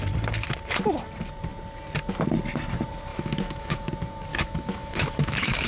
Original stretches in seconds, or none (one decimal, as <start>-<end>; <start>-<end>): 0.0-3.1; 3.9-4.3